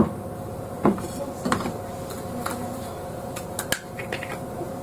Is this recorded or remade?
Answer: recorded